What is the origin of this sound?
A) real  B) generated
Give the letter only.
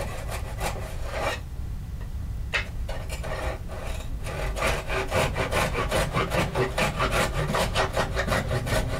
A